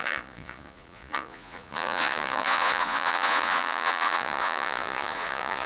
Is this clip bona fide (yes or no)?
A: no